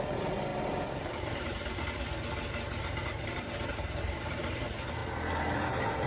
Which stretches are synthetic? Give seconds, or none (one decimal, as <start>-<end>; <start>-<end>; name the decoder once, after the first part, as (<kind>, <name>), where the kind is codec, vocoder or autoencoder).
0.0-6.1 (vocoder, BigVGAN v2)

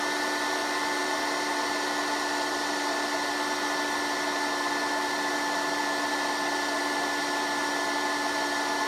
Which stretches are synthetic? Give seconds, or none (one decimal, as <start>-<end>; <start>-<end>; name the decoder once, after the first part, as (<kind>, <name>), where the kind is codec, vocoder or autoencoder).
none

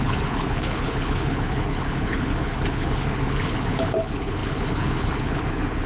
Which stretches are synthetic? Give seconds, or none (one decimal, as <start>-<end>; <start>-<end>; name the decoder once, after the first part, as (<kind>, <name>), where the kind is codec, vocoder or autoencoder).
0.0-5.9 (codec, HILCodec)

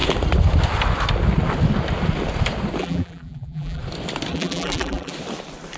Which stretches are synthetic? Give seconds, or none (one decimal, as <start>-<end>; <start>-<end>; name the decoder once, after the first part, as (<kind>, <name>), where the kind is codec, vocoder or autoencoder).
2.8-3.8 (vocoder, BigVGAN v2); 4.3-5.1